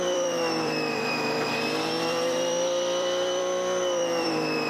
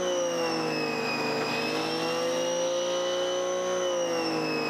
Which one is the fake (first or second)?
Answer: first